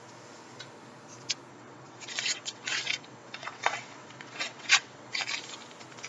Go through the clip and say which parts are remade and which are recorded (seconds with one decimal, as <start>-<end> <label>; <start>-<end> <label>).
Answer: 0.0-1.5 recorded; 1.5-5.2 remade; 5.2-6.1 recorded